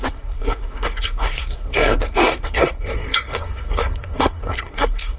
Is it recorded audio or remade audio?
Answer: remade